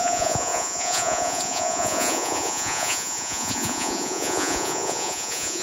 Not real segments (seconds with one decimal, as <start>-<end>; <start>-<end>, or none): 0.0-5.6